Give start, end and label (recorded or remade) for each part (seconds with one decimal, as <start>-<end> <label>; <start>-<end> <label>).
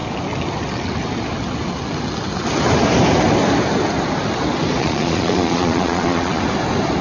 0.0-4.8 recorded; 4.8-6.4 remade; 6.4-7.0 recorded